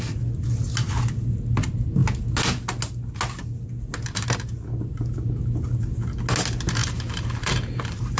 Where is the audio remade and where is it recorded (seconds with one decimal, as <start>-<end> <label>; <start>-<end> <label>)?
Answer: 0.0-6.8 recorded; 6.8-8.2 remade